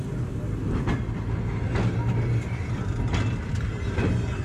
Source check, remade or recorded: recorded